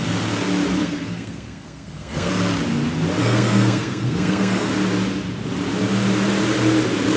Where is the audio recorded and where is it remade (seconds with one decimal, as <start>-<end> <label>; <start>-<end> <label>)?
0.0-0.8 recorded; 0.8-2.3 remade; 2.3-3.2 recorded; 3.2-4.7 remade; 4.7-7.2 recorded